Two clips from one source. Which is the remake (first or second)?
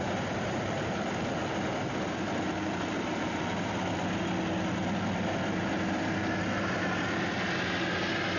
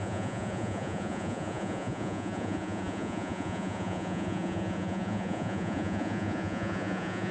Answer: second